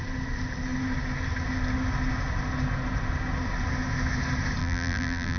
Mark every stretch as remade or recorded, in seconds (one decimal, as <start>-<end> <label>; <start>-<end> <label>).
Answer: 0.0-4.6 recorded; 4.6-5.4 remade